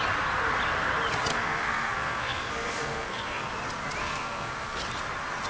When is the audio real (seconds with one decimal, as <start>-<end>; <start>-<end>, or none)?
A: 0.0-1.3; 3.5-4.0; 4.8-5.5